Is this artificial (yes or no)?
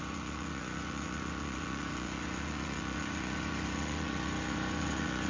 yes